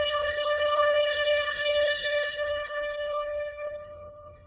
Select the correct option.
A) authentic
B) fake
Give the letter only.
B